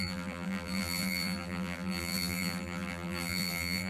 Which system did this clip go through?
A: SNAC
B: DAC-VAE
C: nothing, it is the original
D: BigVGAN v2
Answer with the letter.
D